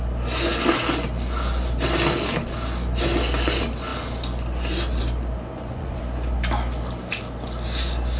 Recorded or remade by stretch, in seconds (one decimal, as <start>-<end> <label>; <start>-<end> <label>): 0.0-5.5 recorded; 5.5-6.0 remade; 6.0-8.2 recorded